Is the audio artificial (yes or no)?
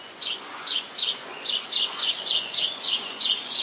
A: yes